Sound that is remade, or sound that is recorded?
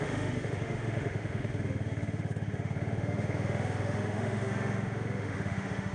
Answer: remade